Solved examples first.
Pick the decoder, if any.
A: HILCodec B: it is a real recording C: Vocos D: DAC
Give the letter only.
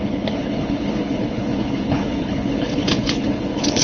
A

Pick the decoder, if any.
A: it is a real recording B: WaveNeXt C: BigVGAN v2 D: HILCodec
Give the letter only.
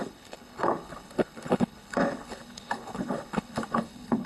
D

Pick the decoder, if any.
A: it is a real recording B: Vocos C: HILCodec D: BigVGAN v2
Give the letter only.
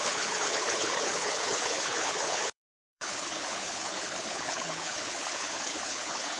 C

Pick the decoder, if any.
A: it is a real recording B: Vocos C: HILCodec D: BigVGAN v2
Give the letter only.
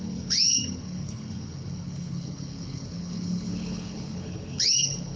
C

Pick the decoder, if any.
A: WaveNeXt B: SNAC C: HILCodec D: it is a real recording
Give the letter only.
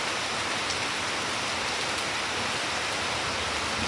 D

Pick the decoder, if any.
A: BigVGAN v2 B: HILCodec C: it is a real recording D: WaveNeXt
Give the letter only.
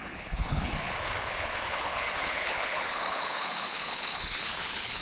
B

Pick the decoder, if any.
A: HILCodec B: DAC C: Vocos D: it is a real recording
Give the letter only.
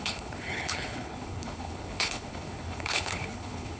A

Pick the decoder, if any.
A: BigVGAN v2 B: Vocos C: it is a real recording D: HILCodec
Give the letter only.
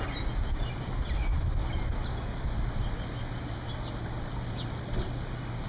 C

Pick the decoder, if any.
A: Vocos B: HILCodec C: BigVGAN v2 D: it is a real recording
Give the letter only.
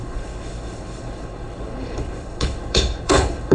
B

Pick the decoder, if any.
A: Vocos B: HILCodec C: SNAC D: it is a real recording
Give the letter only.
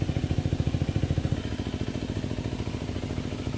D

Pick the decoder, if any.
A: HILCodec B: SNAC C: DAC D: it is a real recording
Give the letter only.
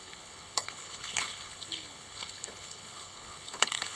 A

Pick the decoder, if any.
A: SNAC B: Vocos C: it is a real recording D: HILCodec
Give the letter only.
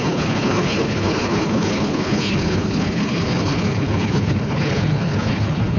D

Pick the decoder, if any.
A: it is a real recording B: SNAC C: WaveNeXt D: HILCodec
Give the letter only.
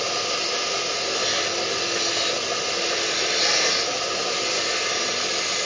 A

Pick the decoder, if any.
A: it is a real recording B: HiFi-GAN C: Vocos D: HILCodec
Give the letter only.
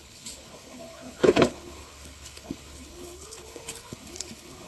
D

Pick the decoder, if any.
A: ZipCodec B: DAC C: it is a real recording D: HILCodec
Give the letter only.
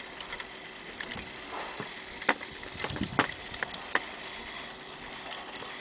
C